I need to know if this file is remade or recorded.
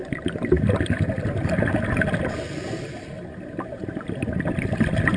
recorded